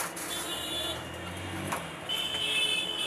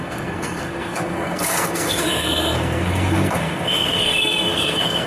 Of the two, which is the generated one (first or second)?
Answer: second